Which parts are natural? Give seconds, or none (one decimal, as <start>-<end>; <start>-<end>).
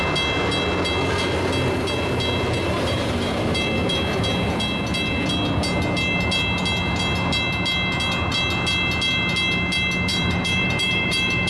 0.0-2.6; 3.4-10.1